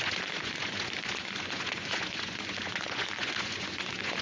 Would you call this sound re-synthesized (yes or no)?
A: yes